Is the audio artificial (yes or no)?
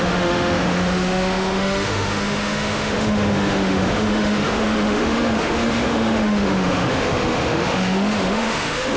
yes